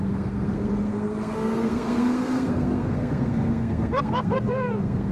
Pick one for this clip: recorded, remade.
remade